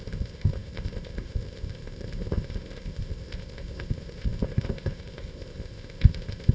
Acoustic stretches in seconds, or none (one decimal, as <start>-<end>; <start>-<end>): none